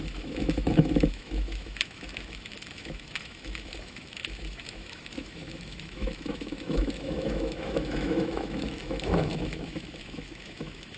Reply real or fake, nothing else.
fake